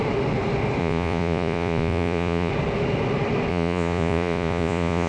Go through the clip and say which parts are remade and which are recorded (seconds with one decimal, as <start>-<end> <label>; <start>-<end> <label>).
0.0-0.8 recorded; 0.8-2.5 remade; 2.5-3.5 recorded; 3.5-5.1 remade